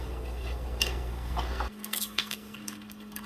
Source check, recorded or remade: remade